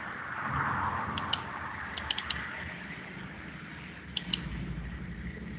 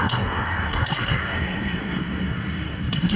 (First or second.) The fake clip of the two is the second